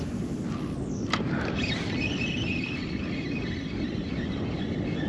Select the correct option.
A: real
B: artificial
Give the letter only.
A